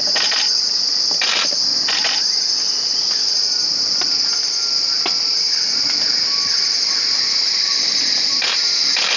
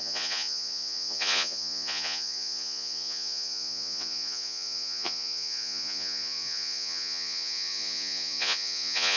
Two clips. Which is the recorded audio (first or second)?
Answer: first